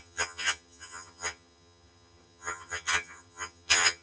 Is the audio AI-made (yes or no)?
yes